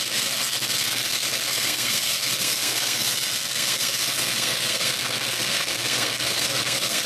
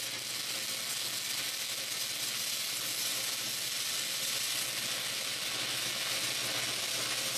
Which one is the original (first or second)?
second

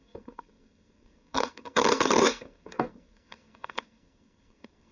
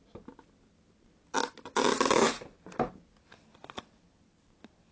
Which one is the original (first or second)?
second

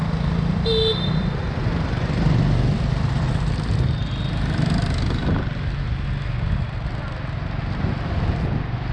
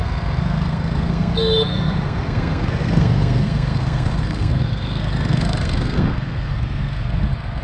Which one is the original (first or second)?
first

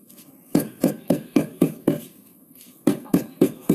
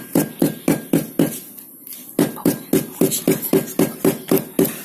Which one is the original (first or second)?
second